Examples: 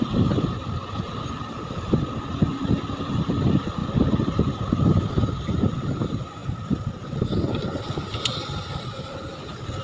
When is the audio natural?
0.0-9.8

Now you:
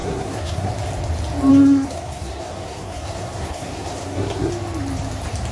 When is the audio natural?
0.7-1.5; 4.5-5.5

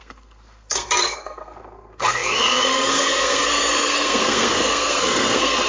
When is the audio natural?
none

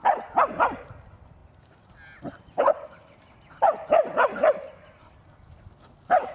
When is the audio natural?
0.0-6.3

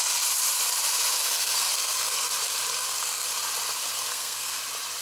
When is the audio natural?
0.0-1.2; 2.3-2.7; 3.3-3.9; 4.6-5.0

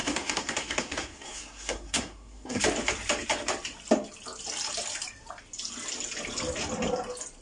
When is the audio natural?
2.6-7.4

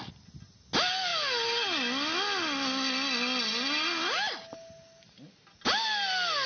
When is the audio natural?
0.0-6.5

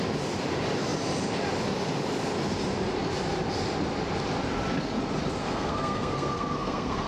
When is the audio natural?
0.0-5.4